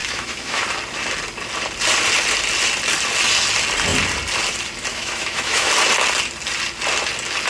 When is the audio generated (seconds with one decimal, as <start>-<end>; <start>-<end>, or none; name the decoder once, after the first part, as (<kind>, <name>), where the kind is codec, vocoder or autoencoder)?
0.0-0.6 (autoencoder, DAC-VAE); 4.9-5.7